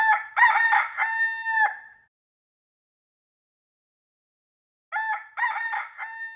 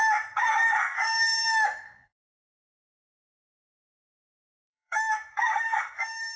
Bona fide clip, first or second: first